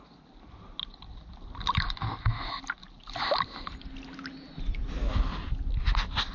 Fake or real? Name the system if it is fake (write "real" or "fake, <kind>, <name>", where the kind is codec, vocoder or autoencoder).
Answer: real